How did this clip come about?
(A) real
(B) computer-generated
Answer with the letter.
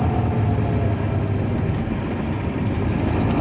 A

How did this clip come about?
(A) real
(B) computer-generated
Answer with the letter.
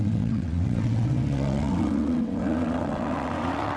B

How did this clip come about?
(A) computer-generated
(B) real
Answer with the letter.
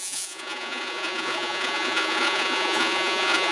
A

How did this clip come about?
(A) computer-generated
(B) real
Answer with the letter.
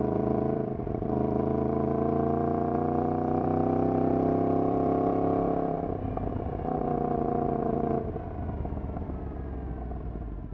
A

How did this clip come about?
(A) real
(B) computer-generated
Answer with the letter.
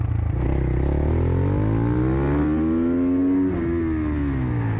A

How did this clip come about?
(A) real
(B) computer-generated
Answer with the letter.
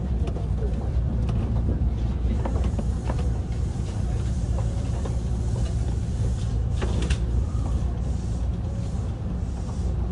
B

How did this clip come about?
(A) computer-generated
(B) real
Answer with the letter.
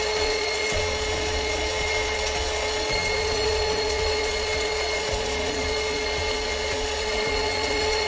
A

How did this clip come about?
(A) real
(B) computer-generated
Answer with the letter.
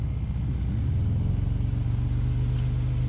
A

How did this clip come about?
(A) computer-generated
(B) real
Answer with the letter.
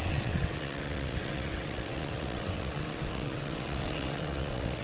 A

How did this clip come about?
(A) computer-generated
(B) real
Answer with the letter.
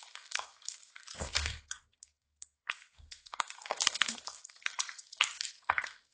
A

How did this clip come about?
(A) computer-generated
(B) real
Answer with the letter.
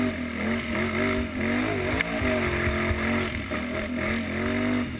B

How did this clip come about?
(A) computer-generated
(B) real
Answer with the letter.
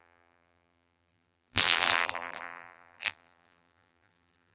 A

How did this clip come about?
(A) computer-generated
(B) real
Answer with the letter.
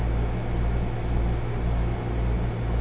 B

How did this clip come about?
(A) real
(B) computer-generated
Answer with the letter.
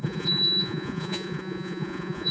B